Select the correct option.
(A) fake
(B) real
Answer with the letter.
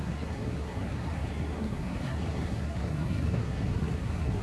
A